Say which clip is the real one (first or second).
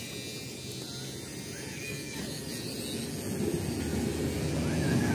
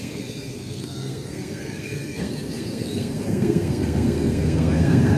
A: first